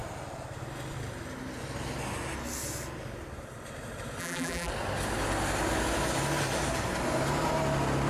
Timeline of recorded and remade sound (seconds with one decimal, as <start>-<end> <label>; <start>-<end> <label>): 0.0-4.2 recorded; 4.2-4.7 remade; 4.7-8.1 recorded